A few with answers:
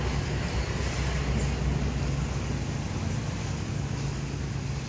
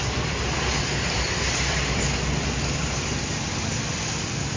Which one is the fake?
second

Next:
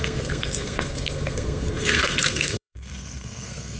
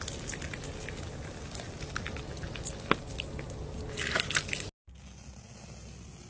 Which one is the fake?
first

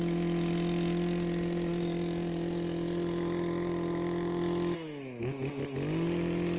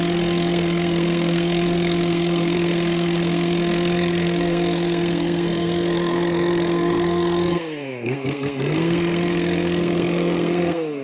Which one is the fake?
second